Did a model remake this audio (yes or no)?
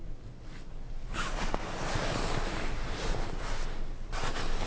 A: no